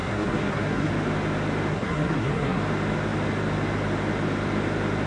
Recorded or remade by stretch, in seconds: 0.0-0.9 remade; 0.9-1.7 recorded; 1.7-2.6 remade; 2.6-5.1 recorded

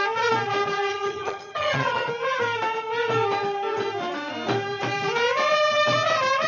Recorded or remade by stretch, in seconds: 0.0-0.9 recorded; 0.9-2.1 remade; 2.1-6.5 recorded

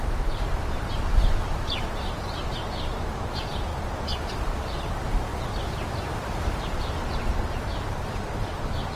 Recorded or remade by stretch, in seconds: 0.0-3.7 remade; 3.7-4.3 recorded; 4.3-9.0 remade

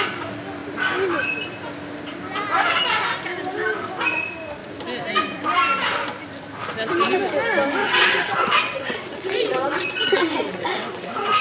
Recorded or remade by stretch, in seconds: 0.0-7.8 recorded; 7.8-11.4 remade